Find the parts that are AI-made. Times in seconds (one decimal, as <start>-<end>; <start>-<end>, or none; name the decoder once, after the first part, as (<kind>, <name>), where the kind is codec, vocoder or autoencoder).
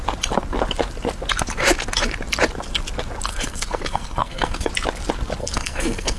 3.3-4.7 (codec, SNAC); 5.4-6.2